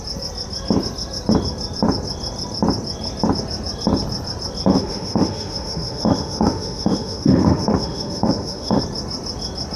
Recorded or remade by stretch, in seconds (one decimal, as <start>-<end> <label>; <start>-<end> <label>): 0.0-4.7 recorded; 4.7-8.8 remade; 8.8-9.8 recorded